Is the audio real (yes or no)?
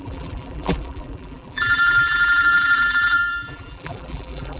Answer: no